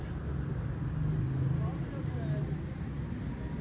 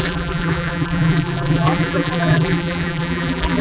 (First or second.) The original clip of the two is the first